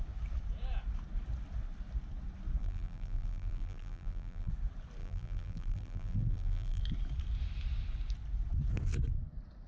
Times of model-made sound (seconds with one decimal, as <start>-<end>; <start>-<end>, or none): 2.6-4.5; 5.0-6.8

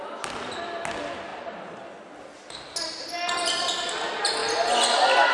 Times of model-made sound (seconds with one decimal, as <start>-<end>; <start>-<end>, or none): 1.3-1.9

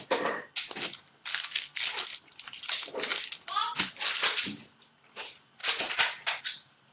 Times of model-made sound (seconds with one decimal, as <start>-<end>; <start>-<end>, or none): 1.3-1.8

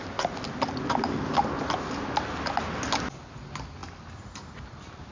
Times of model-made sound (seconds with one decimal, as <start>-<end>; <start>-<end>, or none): none